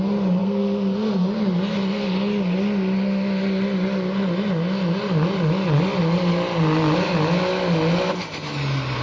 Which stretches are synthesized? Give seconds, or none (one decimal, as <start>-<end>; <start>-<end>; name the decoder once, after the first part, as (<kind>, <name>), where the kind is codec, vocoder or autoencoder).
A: 0.4-1.3 (codec, SNAC)